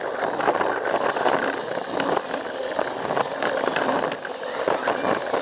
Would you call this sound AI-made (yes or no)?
no